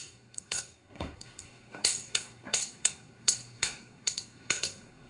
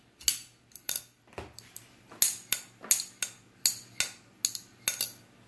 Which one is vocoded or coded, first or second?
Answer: first